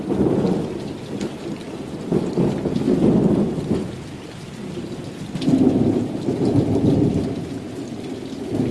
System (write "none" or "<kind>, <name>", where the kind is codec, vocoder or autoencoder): none